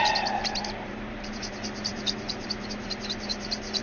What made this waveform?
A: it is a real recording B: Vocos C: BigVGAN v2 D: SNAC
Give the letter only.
C